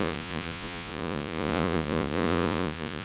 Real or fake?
fake